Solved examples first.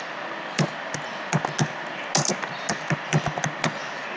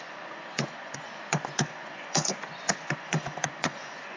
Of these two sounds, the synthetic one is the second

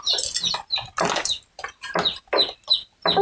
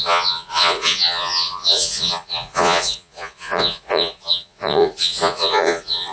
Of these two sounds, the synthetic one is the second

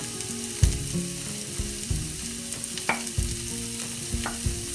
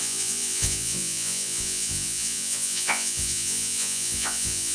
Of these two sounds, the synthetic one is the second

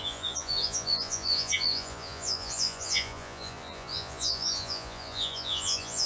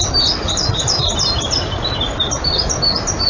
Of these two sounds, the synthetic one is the first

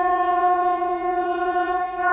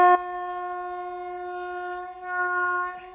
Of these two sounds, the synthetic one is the first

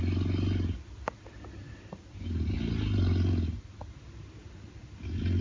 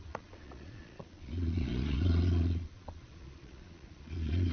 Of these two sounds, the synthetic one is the second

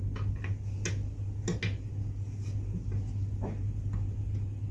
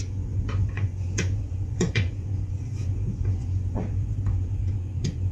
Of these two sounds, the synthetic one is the second